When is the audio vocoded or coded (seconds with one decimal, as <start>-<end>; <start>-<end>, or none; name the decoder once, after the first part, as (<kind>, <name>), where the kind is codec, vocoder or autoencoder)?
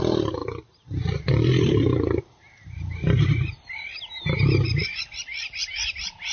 0.4-2.2 (vocoder, BigVGAN v2)